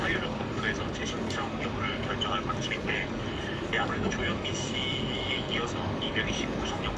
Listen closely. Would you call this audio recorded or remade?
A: remade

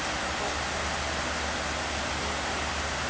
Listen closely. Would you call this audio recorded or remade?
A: recorded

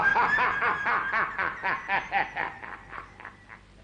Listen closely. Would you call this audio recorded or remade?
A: recorded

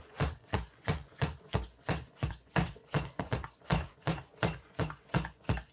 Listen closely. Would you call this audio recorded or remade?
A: remade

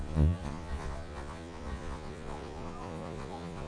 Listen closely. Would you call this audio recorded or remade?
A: remade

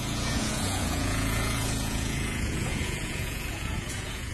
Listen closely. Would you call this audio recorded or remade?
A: remade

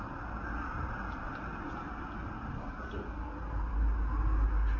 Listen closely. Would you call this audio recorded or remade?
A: recorded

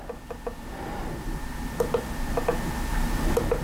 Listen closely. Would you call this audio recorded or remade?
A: recorded